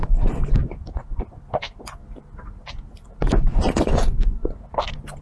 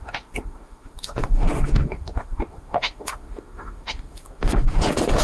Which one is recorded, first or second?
first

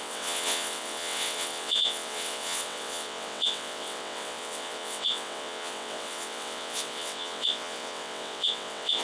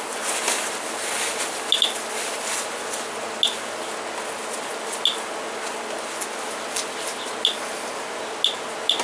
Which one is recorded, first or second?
second